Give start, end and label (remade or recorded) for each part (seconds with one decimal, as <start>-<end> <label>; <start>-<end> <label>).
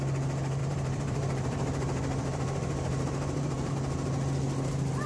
0.0-0.6 recorded; 0.6-3.7 remade; 3.7-5.1 recorded